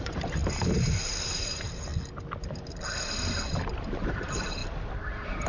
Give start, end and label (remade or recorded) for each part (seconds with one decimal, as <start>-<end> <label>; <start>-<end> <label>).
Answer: 0.0-0.4 remade; 0.4-1.0 recorded; 1.0-1.9 remade; 1.9-4.0 recorded; 4.0-4.6 remade; 4.6-5.5 recorded